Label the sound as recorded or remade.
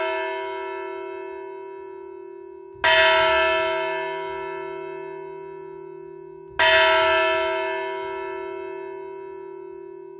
recorded